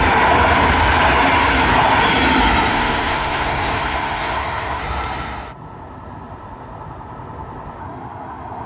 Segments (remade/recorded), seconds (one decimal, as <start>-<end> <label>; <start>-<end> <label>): 0.0-2.7 recorded; 2.7-4.8 remade; 4.8-7.8 recorded; 7.8-8.7 remade